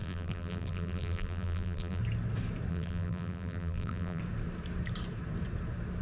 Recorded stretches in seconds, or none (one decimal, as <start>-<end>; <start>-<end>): 2.0-2.7; 4.2-6.0